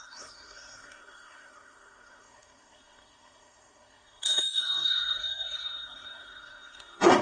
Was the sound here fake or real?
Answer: fake